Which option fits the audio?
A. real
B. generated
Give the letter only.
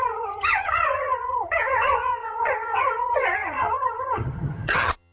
B